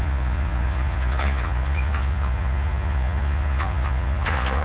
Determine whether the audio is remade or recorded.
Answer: remade